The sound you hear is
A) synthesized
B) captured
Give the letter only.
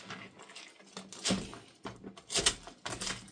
B